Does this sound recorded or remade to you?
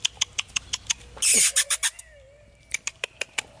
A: recorded